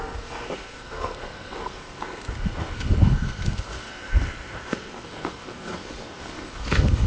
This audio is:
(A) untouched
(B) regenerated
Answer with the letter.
B